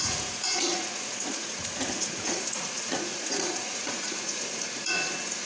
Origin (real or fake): fake